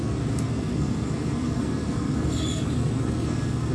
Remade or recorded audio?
remade